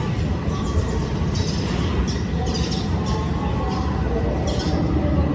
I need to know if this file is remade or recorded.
recorded